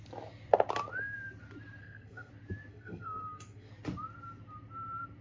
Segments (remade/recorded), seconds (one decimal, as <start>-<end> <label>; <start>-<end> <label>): 0.0-1.8 recorded; 1.8-2.3 remade; 2.3-2.7 recorded; 2.7-3.7 remade; 3.7-5.2 recorded